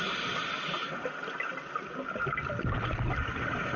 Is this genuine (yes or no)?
yes